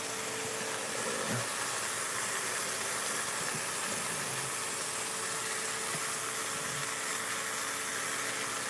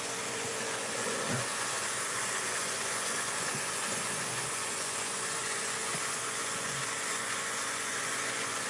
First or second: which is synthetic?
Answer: second